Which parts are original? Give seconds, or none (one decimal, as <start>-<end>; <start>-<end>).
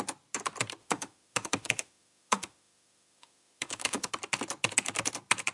0.0-0.8; 4.1-5.5